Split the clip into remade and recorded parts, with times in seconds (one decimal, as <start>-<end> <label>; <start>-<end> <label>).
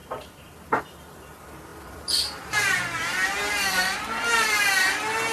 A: 0.0-0.8 remade; 0.8-1.7 recorded; 1.7-2.5 remade; 2.5-3.4 recorded; 3.4-4.7 remade; 4.7-5.3 recorded